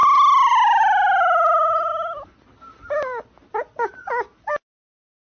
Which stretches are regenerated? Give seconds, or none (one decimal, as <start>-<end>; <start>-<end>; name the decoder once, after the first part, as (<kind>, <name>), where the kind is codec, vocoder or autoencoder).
none